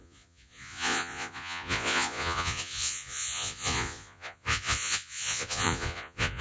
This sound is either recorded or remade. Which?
remade